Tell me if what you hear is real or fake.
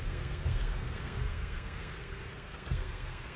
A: fake